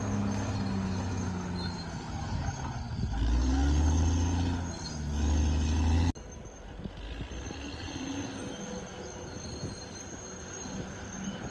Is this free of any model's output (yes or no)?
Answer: yes